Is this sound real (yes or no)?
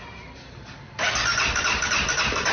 yes